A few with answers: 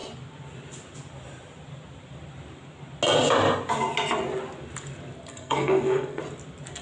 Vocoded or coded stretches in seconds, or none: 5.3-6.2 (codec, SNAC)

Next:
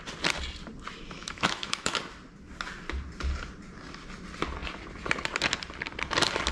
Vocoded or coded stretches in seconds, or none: 1.2-2.0 (autoencoder, DAC-VAE)